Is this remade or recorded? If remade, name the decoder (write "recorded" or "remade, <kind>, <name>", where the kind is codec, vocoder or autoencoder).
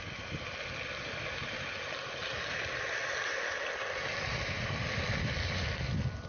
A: recorded